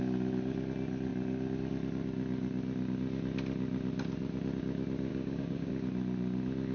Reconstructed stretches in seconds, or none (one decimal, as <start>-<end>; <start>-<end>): 5.1-5.7